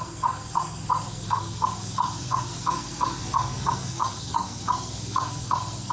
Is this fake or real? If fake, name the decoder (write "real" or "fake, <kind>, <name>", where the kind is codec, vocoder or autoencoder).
fake, codec, SNAC